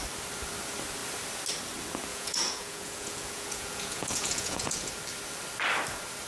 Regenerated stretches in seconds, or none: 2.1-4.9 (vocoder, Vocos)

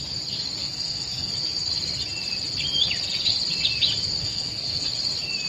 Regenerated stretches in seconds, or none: 0.6-1.3 (codec, SNAC); 4.2-4.9